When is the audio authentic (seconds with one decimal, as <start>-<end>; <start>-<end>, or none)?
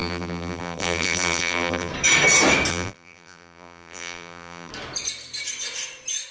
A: 1.9-2.7; 4.7-6.3